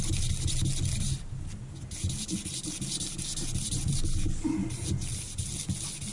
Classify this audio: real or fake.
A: real